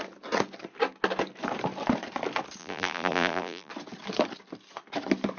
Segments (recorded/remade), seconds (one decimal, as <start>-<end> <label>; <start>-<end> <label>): 0.0-2.6 recorded; 2.6-3.7 remade; 3.7-5.4 recorded